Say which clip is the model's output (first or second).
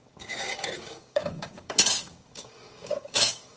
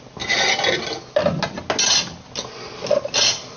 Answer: first